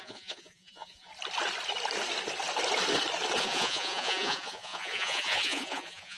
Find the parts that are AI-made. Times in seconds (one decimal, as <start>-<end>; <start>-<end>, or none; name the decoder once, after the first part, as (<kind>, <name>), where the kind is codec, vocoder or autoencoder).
0.0-1.1 (vocoder, Vocos); 3.4-6.2